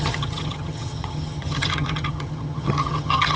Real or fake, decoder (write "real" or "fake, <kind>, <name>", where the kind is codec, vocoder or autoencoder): fake, vocoder, HiFi-GAN